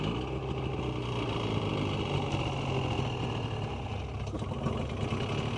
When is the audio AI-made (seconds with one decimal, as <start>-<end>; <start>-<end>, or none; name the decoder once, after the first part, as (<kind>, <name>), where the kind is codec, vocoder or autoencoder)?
none